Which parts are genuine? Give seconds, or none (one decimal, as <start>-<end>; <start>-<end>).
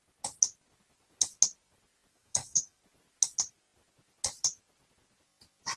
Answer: 0.0-2.1; 2.8-5.8